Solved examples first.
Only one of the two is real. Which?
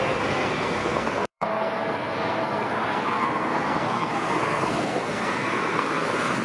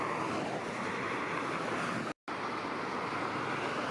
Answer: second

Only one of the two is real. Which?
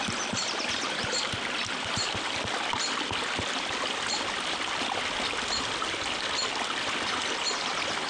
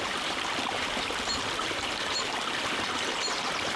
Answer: first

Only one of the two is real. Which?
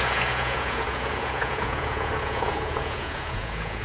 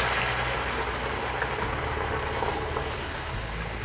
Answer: second